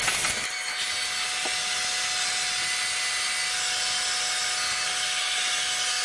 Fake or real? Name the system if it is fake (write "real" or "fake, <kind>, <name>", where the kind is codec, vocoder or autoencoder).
real